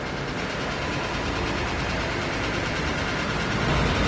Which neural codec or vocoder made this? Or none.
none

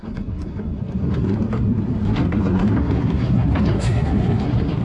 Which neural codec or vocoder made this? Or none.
codec, SNAC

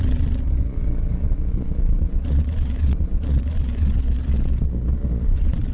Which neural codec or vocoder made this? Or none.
vocoder, Vocos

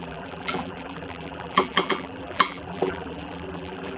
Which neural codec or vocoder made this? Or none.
vocoder, BigVGAN v2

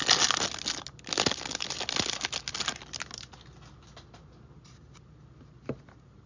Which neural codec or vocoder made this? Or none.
none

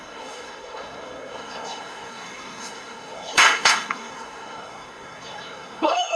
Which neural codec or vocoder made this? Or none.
codec, SNAC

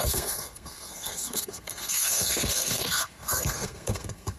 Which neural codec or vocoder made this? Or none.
codec, SNAC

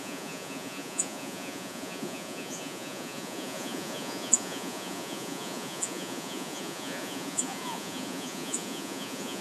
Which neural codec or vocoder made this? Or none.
vocoder, Vocos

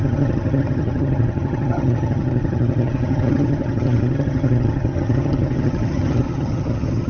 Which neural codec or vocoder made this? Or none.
vocoder, HiFi-GAN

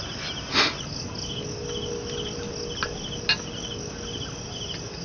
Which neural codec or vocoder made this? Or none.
none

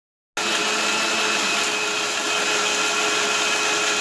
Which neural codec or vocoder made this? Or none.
none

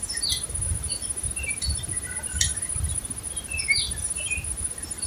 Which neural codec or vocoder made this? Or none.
vocoder, BigVGAN v2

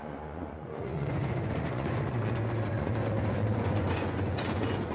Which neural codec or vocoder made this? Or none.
vocoder, Vocos